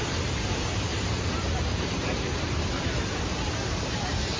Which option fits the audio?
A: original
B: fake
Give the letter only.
B